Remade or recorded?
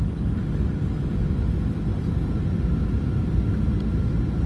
recorded